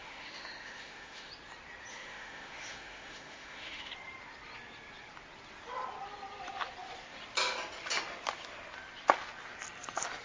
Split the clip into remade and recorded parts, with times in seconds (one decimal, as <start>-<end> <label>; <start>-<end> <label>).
0.0-1.3 remade; 1.3-1.9 recorded; 1.9-3.9 remade; 3.9-10.2 recorded